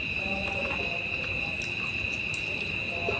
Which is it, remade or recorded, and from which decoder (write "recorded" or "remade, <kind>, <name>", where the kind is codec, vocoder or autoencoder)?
recorded